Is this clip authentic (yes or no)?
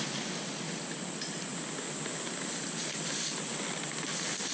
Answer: yes